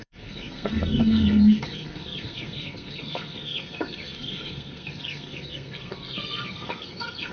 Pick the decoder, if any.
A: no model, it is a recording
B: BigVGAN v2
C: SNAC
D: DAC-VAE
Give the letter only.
C